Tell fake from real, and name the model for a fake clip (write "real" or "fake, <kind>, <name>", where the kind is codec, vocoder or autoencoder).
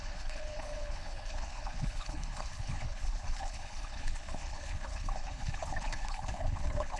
fake, codec, HILCodec